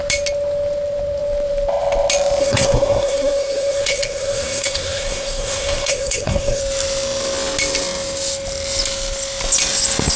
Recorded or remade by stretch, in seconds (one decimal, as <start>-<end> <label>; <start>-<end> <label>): 0.0-2.4 recorded; 2.4-6.6 remade; 6.6-10.2 recorded